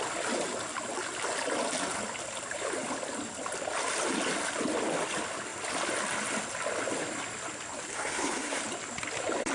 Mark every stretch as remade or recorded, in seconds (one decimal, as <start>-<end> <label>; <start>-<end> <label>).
0.0-7.9 recorded; 7.9-8.6 remade; 8.6-9.5 recorded